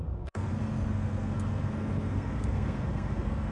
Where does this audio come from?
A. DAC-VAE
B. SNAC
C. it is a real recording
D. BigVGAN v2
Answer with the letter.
B